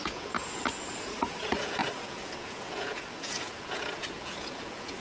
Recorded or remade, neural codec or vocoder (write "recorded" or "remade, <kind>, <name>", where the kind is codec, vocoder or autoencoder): remade, vocoder, Vocos